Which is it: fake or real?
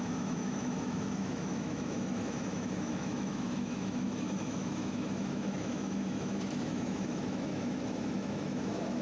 fake